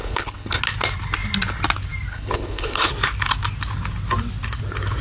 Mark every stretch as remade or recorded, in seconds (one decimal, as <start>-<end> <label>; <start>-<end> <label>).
0.0-0.6 remade; 0.6-2.1 recorded; 2.1-2.9 remade; 2.9-5.0 recorded